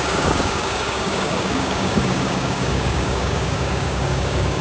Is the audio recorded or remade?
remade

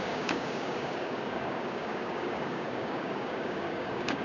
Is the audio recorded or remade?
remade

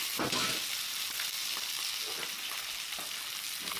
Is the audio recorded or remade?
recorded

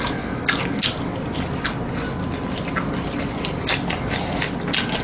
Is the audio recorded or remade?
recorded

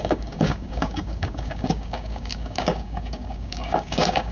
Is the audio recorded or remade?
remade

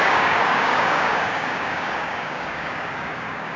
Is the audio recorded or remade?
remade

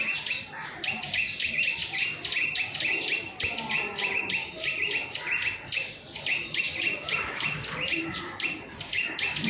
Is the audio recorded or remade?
recorded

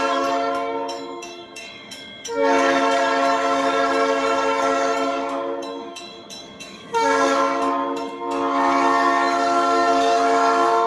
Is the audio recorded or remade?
remade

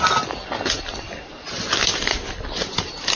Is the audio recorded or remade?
recorded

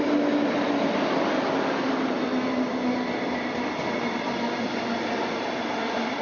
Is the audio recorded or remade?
recorded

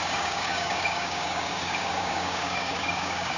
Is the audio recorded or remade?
remade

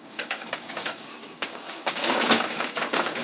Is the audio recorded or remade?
remade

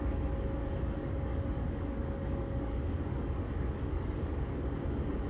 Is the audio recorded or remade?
remade